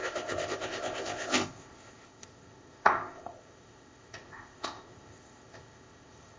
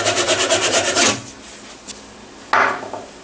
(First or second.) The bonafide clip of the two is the second